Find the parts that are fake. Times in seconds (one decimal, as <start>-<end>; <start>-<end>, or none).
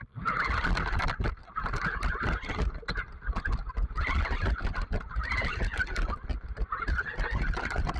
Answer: none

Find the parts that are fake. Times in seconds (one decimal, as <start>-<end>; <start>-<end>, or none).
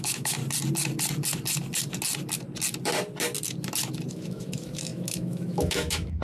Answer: 0.0-0.4; 4.1-6.2